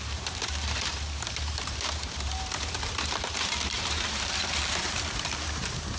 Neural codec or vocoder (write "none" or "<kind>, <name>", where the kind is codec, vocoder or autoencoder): vocoder, BigVGAN v2